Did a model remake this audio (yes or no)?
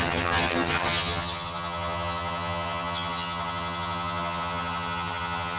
yes